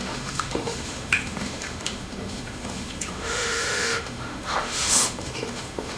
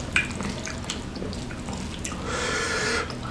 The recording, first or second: second